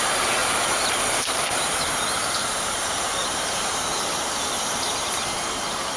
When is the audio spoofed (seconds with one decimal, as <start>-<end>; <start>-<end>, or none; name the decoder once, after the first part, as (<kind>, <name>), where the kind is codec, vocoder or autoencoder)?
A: 0.4-0.9 (vocoder, BigVGAN v2); 2.2-6.0